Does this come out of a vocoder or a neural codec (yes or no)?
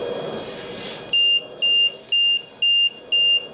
no